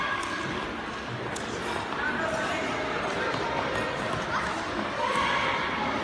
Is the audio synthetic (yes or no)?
no